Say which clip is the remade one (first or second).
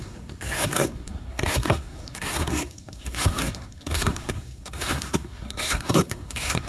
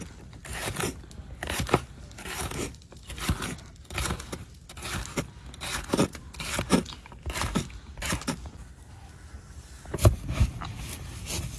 first